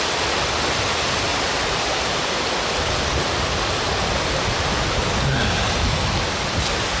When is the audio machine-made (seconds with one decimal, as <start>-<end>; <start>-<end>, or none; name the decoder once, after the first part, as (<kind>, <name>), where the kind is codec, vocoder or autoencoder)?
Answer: 1.3-2.5 (vocoder, BigVGAN v2)

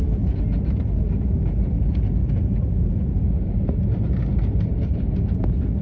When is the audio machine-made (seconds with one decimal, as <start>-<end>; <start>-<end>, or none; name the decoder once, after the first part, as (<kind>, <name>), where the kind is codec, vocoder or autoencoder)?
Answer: 2.2-4.5 (vocoder, BigVGAN v2)

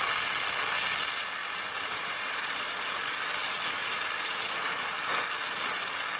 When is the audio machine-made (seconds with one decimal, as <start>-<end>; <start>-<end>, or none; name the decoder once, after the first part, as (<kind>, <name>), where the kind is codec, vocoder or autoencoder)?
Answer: 1.4-3.0 (vocoder, BigVGAN v2); 3.8-4.7

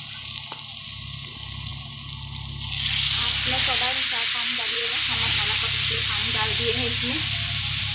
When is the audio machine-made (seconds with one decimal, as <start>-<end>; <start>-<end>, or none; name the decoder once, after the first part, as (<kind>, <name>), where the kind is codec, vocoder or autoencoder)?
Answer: 0.0-1.7 (vocoder, BigVGAN v2); 4.6-7.9